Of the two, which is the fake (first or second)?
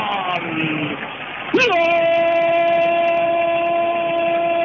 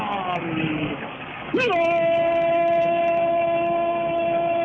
second